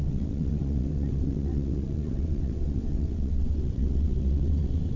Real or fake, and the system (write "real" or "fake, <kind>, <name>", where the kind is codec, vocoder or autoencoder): fake, vocoder, WaveNeXt